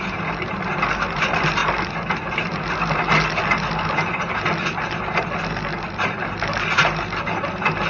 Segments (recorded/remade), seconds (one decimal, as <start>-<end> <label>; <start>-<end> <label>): 0.0-7.9 recorded